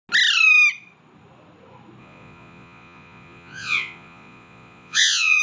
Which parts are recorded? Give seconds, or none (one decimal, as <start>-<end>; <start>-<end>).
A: 0.0-2.0